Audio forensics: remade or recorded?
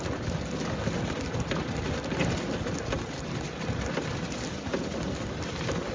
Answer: recorded